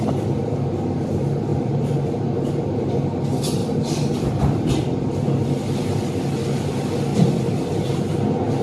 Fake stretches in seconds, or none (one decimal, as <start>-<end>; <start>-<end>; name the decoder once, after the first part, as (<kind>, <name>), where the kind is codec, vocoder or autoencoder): 1.5-2.5 (vocoder, BigVGAN v2); 3.6-4.7